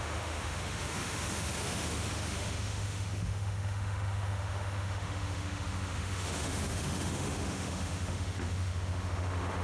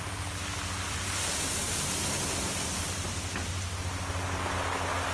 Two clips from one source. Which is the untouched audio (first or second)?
second